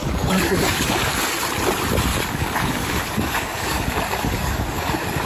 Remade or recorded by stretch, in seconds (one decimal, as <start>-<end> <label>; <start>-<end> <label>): 0.0-1.2 remade; 1.2-2.1 recorded; 2.1-5.3 remade